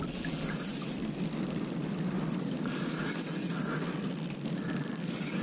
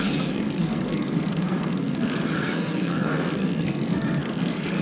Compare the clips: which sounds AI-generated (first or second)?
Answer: second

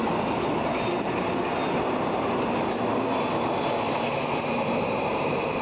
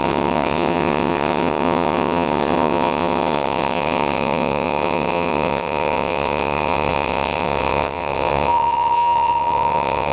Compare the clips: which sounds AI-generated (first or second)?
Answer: second